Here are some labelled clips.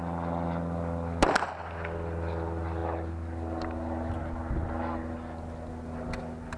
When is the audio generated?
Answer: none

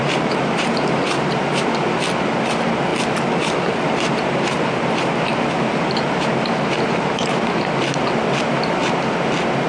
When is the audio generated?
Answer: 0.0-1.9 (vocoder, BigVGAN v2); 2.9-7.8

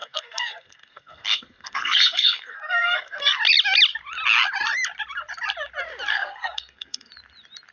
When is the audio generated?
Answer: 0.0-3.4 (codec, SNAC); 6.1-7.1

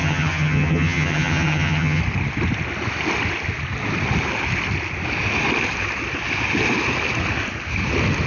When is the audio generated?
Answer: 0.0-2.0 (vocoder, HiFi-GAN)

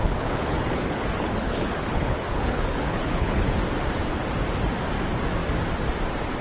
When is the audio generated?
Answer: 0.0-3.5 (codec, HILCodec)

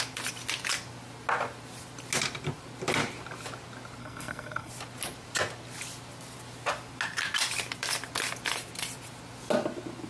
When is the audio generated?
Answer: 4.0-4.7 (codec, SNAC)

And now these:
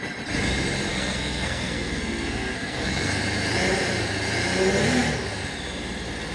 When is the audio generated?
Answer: 0.9-3.2 (codec, SNAC)

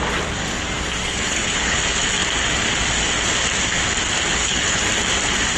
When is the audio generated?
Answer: 1.0-1.8 (codec, HILCodec); 4.3-4.8